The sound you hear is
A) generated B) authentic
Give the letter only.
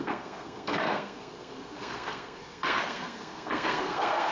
A